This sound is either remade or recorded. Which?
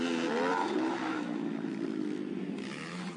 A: recorded